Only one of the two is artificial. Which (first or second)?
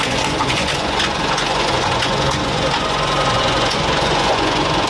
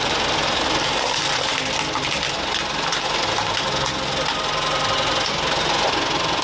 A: first